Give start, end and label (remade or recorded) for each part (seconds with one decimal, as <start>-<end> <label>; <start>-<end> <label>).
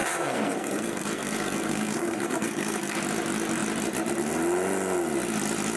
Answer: 0.0-3.0 remade; 3.0-5.8 recorded